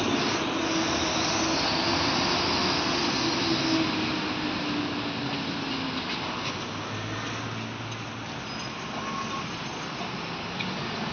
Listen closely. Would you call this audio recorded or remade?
recorded